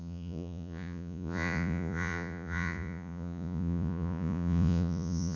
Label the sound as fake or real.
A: fake